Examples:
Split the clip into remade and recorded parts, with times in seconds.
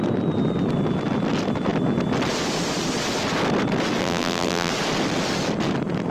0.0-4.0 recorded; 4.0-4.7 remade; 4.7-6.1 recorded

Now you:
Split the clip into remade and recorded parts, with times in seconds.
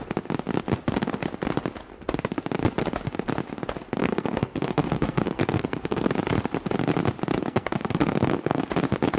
0.0-4.0 recorded; 4.0-6.1 remade; 6.1-7.4 recorded; 7.4-8.6 remade; 8.6-9.2 recorded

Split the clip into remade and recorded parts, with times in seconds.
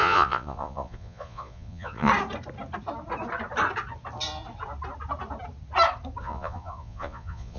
0.0-2.1 remade; 2.1-6.2 recorded; 6.2-7.6 remade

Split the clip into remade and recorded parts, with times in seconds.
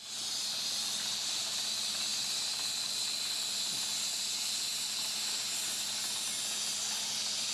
0.0-7.5 recorded